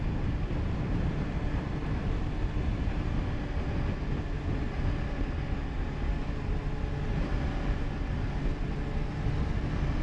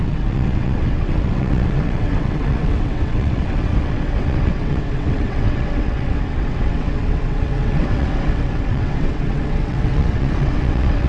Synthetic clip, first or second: second